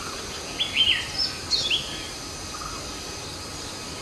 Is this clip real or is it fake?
real